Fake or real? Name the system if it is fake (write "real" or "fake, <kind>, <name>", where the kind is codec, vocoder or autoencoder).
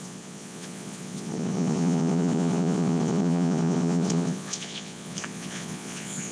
fake, vocoder, Vocos